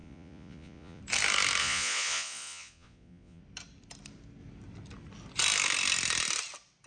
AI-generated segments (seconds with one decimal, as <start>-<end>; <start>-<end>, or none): 0.0-1.0; 1.6-3.4